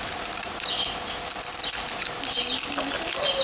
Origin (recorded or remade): recorded